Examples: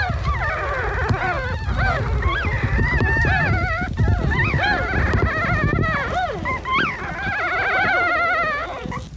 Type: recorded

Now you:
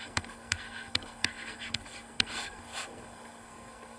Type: remade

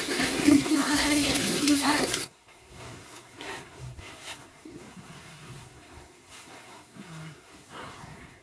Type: remade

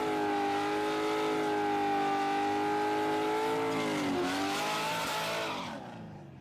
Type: recorded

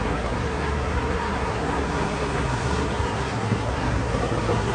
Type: remade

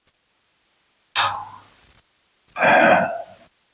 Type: recorded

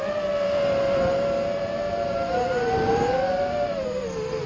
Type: recorded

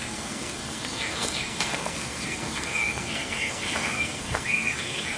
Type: remade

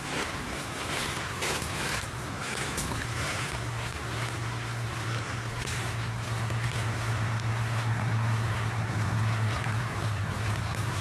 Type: remade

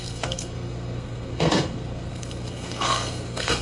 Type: remade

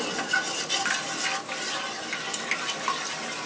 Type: recorded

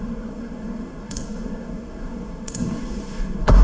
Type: remade